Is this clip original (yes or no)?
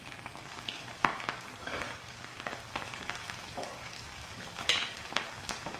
no